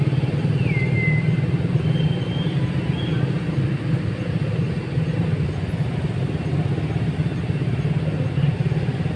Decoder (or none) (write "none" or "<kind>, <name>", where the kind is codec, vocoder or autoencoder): none